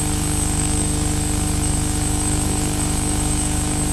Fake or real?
fake